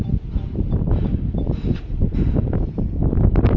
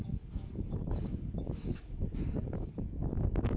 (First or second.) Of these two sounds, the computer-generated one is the second